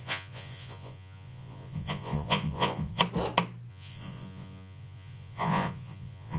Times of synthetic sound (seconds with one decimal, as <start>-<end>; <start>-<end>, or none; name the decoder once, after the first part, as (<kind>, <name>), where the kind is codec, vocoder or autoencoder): 0.0-3.0 (vocoder, Vocos); 3.7-6.4

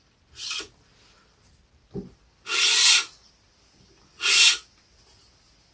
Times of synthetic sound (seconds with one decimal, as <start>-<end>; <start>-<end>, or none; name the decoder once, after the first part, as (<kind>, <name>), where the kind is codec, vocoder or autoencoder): none

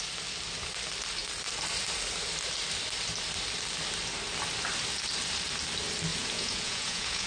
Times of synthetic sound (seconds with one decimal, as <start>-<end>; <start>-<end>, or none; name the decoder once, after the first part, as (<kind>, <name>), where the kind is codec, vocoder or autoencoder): 6.1-7.3 (vocoder, Vocos)

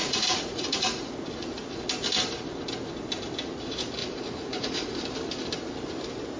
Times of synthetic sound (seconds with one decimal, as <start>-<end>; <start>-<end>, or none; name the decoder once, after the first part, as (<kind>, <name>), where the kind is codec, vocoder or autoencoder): 0.0-1.8 (vocoder, Vocos); 4.0-5.0

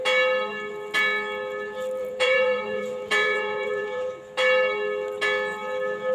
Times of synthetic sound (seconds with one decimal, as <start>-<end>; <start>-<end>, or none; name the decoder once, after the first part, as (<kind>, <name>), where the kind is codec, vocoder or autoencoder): 2.0-4.1 (vocoder, Vocos)

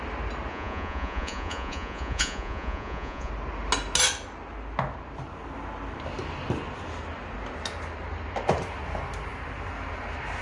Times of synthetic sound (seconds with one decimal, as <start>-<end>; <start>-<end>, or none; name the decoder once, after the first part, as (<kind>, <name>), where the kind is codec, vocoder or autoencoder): 0.5-3.3 (vocoder, Vocos)